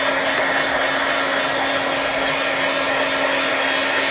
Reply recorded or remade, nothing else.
recorded